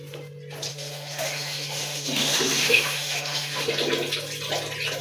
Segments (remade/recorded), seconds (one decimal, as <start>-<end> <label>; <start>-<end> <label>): 0.0-0.7 recorded; 0.7-3.7 remade; 3.7-5.0 recorded